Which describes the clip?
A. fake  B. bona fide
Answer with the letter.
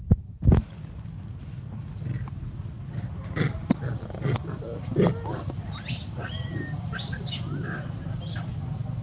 B